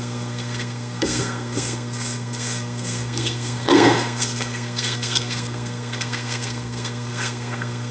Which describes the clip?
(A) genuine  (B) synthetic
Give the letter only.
B